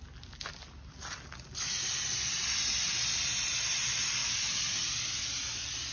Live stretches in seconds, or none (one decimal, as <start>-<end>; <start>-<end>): 0.0-5.9